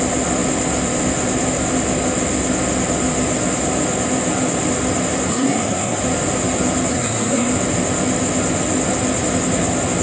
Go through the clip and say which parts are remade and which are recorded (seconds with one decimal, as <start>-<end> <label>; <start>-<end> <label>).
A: 0.0-5.3 recorded; 5.3-6.0 remade; 6.0-6.9 recorded; 6.9-7.5 remade; 7.5-10.0 recorded